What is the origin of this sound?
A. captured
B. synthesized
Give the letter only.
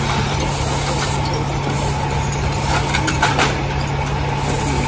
A